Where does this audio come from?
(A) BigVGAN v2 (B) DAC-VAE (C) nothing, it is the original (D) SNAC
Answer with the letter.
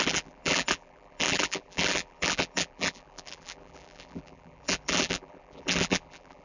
A